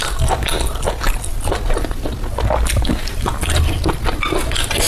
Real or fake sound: real